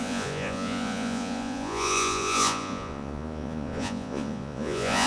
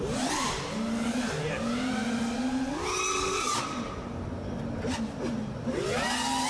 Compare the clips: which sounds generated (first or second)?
first